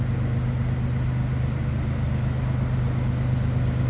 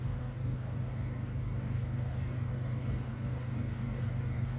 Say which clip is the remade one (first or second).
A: second